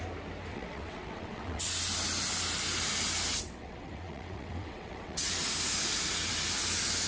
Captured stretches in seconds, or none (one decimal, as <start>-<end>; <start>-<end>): 0.0-0.5; 1.7-3.3; 5.3-7.1